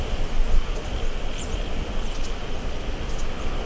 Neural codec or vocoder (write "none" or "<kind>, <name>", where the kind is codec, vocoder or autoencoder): none